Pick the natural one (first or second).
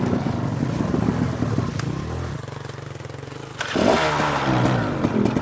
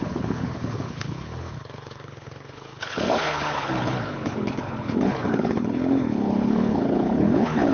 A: first